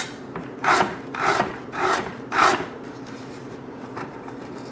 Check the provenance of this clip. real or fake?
fake